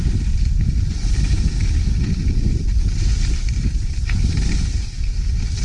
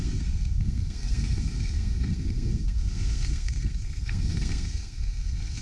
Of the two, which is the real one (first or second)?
first